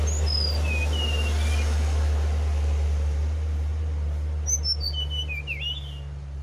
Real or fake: real